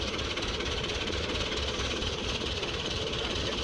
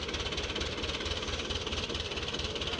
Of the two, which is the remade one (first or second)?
first